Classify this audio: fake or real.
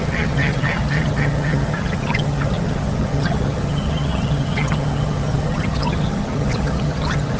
fake